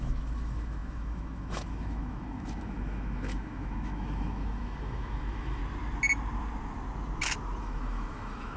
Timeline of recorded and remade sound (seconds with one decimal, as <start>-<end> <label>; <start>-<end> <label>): 0.0-5.6 remade; 5.6-7.6 recorded; 7.6-8.6 remade